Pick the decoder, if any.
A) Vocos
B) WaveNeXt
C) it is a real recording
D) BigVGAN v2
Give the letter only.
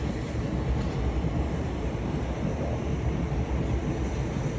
C